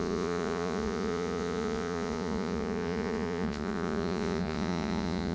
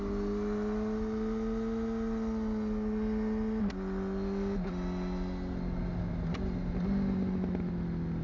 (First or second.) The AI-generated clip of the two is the first